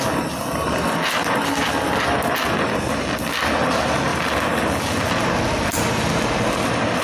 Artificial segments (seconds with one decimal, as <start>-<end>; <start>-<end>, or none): none